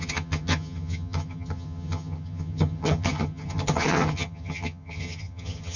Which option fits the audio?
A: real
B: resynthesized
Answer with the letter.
B